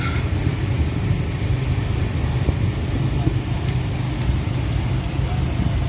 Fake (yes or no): no